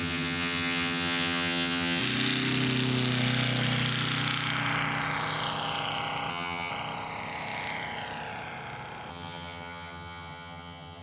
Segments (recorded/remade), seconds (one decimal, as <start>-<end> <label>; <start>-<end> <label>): 0.0-2.0 remade; 2.0-6.3 recorded; 6.3-6.7 remade; 6.7-9.1 recorded; 9.1-11.0 remade